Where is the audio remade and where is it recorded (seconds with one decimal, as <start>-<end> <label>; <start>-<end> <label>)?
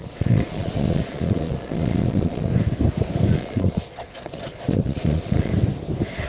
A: 0.0-2.5 remade; 2.5-3.3 recorded; 3.3-5.5 remade; 5.5-6.3 recorded